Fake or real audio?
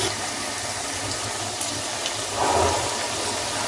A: real